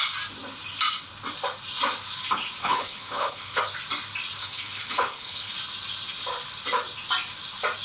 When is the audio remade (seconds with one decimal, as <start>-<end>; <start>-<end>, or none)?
2.6-3.6; 4.4-5.5